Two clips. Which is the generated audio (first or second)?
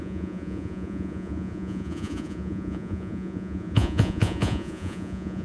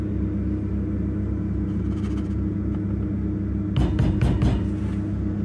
first